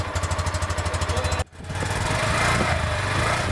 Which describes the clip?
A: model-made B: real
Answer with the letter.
B